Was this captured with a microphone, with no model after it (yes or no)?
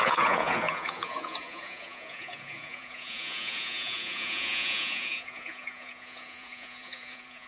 no